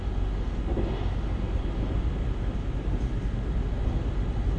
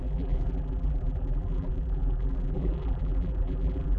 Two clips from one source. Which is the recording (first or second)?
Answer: first